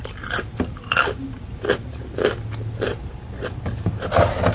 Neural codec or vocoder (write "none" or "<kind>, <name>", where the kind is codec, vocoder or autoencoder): none